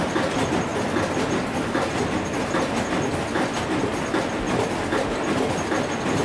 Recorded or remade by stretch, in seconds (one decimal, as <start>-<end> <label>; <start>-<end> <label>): 0.0-6.2 recorded